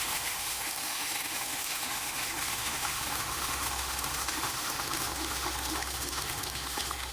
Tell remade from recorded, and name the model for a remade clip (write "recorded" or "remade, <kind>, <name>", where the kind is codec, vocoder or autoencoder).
remade, autoencoder, DAC-VAE